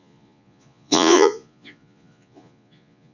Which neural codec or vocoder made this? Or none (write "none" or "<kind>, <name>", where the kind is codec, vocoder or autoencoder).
vocoder, Vocos